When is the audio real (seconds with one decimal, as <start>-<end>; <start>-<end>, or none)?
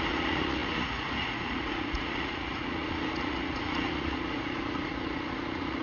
none